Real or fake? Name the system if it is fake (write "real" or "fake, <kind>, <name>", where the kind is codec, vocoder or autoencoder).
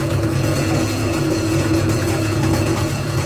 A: fake, vocoder, Vocos